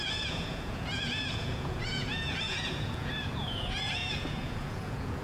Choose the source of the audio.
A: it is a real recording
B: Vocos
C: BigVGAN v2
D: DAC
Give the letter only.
B